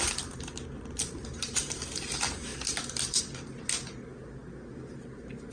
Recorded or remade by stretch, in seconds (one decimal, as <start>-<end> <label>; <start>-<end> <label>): 0.0-1.2 recorded; 1.2-1.8 remade; 1.8-5.5 recorded